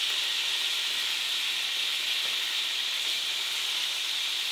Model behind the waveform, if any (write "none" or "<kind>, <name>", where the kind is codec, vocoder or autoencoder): none